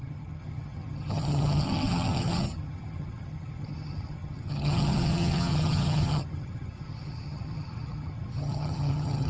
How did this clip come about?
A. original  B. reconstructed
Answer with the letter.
B